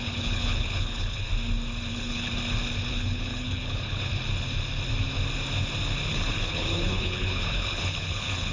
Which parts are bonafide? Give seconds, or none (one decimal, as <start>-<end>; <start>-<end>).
1.3-1.9; 2.3-2.9; 4.1-6.1